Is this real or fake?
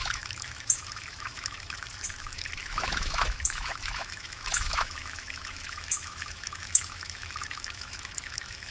fake